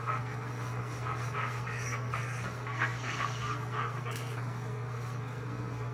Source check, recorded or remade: remade